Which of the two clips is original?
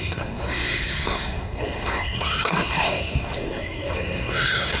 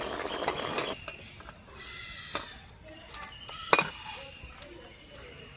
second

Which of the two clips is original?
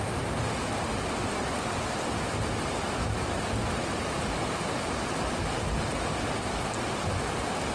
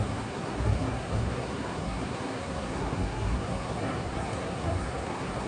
first